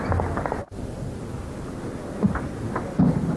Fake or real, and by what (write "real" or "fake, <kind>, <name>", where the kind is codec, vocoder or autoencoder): real